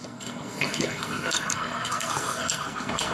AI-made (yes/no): yes